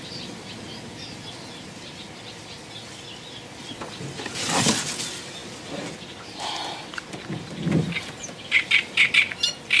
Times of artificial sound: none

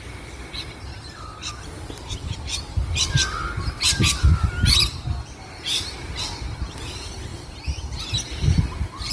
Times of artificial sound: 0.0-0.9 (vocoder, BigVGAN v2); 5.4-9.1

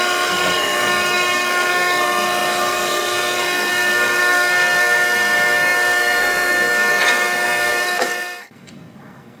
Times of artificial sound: 0.0-9.4 (codec, SNAC)

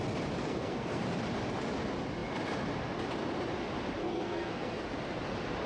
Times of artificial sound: 0.4-1.0 (codec, SNAC); 4.0-4.8